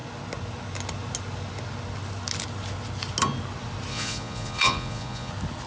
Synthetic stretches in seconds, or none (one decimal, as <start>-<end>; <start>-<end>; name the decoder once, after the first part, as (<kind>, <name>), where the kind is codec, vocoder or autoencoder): 3.9-5.3 (vocoder, Vocos)